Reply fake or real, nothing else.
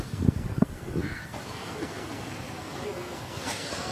fake